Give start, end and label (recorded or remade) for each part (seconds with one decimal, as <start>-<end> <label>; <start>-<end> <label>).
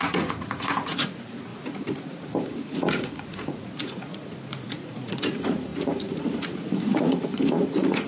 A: 0.0-8.1 remade